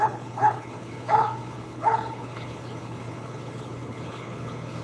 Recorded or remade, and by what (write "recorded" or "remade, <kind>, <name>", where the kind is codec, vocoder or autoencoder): remade, codec, HILCodec